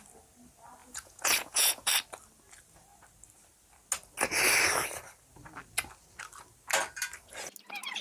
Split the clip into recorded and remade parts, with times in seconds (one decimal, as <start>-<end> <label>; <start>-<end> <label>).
0.0-0.8 recorded; 0.8-1.9 remade; 1.9-8.0 recorded